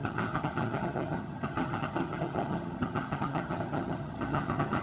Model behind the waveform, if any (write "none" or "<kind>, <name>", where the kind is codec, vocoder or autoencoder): vocoder, HiFi-GAN